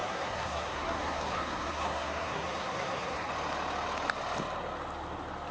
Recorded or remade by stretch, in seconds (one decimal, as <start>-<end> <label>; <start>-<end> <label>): 0.0-3.3 remade; 3.3-5.5 recorded